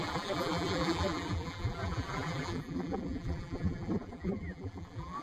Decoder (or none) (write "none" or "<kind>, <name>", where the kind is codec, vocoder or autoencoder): vocoder, BigVGAN v2